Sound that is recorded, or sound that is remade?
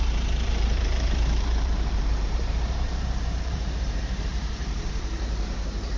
remade